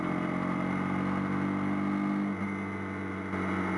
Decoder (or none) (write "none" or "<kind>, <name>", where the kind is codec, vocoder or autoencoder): none